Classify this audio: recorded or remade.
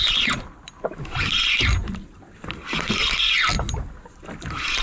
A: recorded